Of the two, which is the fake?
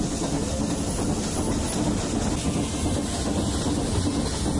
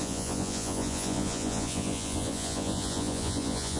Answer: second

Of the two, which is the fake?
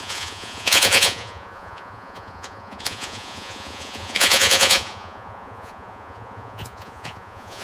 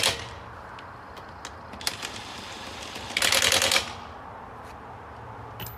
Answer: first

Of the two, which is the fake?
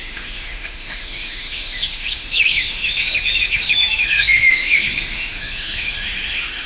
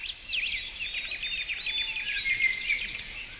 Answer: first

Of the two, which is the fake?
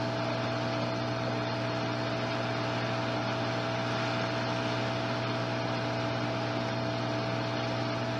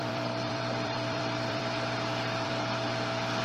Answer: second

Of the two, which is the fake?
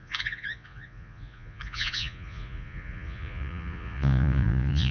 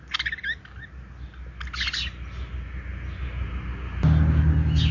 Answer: first